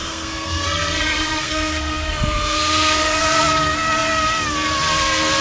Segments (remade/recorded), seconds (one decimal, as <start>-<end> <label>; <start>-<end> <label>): 0.0-3.2 remade; 3.2-5.4 recorded

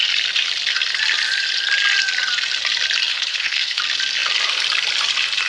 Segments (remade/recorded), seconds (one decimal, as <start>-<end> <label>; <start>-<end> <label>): 0.0-3.1 recorded; 3.1-3.8 remade; 3.8-5.5 recorded

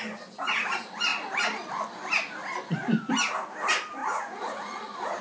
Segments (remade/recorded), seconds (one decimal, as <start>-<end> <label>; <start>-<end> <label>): 0.0-4.0 recorded; 4.0-5.2 remade

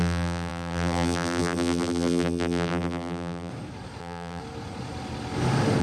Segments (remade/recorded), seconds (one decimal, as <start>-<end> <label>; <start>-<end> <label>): 0.0-3.5 remade; 3.5-4.0 recorded; 4.0-4.4 remade; 4.4-5.8 recorded

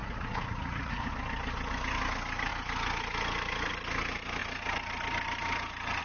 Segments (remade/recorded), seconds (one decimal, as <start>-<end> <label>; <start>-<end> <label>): 0.0-1.1 remade; 1.1-6.0 recorded

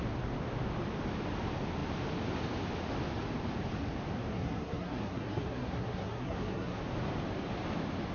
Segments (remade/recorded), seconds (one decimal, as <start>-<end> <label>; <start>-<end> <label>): 0.0-4.3 recorded; 4.3-6.8 remade; 6.8-8.1 recorded

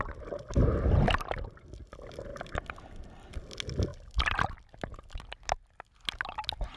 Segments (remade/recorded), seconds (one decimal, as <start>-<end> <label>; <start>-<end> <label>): 0.0-6.8 recorded